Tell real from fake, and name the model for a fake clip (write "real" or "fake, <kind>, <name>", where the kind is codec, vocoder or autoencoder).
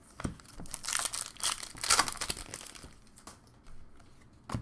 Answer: real